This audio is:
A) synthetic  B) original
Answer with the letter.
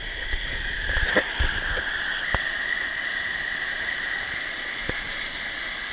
B